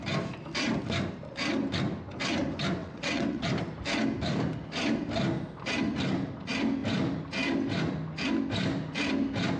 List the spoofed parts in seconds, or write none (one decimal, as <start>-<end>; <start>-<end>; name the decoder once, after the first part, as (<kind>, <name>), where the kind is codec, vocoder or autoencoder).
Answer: 2.8-3.4 (vocoder, WaveNeXt)